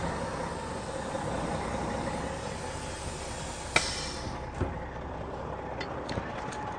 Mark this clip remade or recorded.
recorded